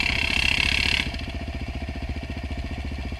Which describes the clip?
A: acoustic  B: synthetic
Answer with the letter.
A